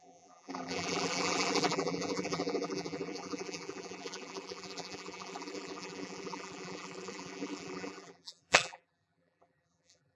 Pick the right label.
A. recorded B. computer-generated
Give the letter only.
B